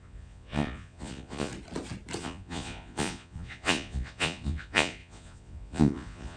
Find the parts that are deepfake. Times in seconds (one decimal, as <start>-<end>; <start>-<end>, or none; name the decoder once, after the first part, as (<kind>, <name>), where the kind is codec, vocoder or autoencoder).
0.0-1.5 (vocoder, Vocos); 2.2-6.4

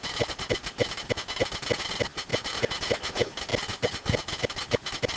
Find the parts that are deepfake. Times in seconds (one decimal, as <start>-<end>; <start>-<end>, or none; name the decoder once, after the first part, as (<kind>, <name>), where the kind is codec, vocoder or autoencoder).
none

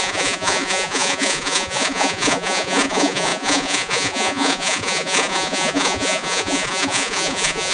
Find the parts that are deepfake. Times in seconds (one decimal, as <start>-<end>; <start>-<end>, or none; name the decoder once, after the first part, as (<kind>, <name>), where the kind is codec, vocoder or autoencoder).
0.0-7.7 (vocoder, Vocos)